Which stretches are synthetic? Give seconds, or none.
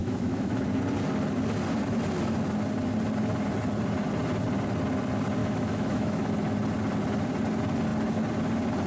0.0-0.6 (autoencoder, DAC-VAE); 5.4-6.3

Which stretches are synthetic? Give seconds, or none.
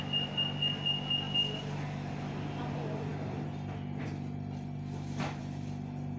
none